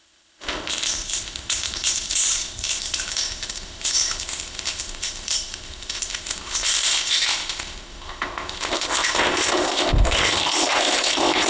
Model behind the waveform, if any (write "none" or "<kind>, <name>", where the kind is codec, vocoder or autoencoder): codec, ZipCodec